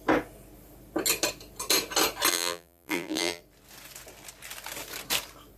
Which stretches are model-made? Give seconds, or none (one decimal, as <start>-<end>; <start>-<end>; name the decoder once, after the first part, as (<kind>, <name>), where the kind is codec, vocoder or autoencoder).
2.3-3.4 (vocoder, BigVGAN v2)